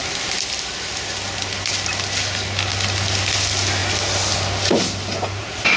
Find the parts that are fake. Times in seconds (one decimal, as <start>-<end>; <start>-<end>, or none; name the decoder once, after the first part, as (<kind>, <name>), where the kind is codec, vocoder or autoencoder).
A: none

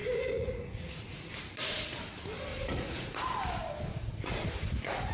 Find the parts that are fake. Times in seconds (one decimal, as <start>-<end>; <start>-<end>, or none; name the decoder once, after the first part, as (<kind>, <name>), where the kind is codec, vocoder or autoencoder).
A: 0.0-1.4 (vocoder, Vocos); 2.5-3.2; 3.9-5.1

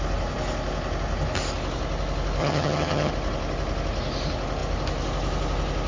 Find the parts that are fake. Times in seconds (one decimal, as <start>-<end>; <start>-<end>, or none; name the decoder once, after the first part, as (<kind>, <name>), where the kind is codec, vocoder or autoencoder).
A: 2.4-3.1 (vocoder, HiFi-GAN)